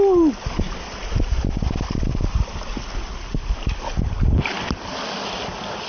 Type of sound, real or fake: real